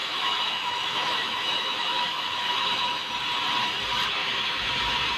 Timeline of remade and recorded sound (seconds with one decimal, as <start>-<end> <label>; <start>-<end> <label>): 0.0-3.1 remade; 3.1-4.2 recorded; 4.2-4.7 remade; 4.7-5.2 recorded